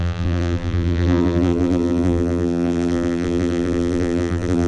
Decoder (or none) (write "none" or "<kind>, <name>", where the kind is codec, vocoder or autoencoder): vocoder, BigVGAN v2